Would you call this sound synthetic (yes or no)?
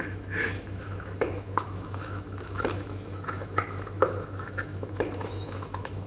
yes